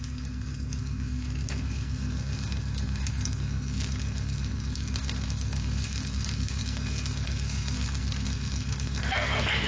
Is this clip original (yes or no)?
no